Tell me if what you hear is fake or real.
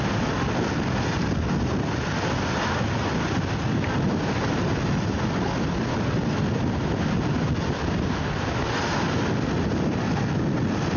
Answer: real